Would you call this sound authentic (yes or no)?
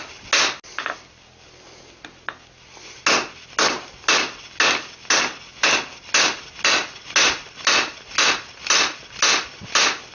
yes